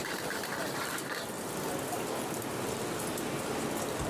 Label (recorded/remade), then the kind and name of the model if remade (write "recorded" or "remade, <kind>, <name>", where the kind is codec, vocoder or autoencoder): recorded